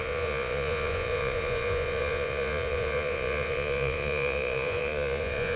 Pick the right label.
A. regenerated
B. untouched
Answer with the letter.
A